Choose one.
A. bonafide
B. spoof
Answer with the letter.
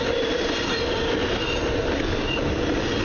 A